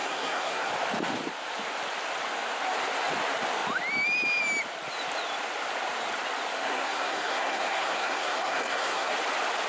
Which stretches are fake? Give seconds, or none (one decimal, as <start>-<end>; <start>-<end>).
0.0-0.7; 6.7-9.1